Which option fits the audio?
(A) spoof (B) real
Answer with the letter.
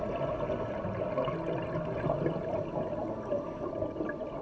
B